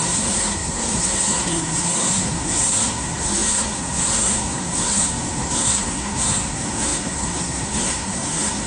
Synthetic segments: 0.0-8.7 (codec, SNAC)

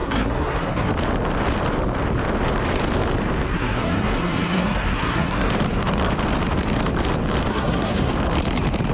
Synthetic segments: 0.0-0.9 (codec, SNAC); 3.5-5.5; 7.5-8.1

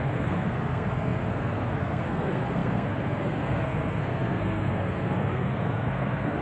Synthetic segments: 0.0-6.4 (codec, SNAC)